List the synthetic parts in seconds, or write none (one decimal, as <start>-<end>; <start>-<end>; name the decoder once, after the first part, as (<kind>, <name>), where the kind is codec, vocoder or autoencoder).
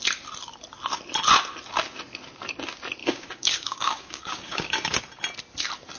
3.0-5.0 (codec, DAC)